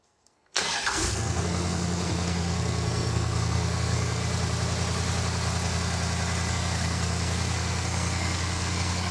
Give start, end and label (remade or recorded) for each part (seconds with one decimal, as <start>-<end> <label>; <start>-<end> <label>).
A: 0.0-4.2 remade; 4.2-6.5 recorded; 6.5-9.1 remade